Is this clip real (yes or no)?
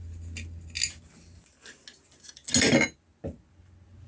yes